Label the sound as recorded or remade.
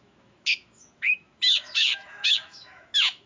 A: remade